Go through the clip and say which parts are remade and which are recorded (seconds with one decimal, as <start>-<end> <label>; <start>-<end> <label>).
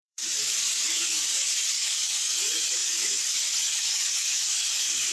0.0-5.1 remade